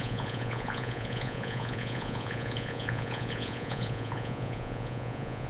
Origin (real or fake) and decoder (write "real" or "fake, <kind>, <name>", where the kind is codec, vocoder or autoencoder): fake, vocoder, Vocos